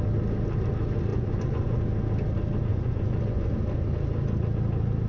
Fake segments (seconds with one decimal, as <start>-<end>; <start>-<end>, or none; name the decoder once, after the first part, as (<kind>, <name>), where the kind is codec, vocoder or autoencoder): 1.1-1.8 (vocoder, Vocos); 2.7-3.5